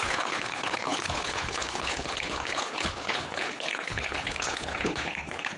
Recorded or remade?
remade